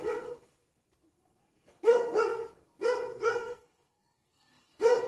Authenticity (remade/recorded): remade